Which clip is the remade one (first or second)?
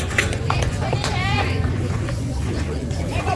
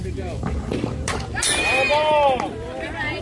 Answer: first